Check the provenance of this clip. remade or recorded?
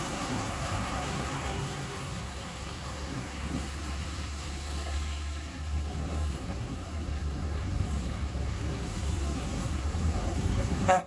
remade